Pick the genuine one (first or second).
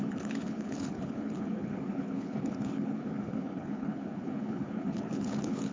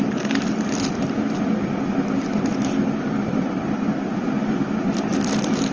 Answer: second